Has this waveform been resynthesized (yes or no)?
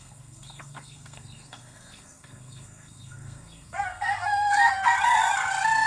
yes